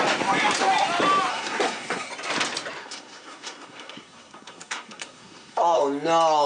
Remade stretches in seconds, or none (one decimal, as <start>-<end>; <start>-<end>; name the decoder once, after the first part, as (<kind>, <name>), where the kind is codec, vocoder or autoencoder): 1.3-2.1 (codec, SNAC); 2.8-5.8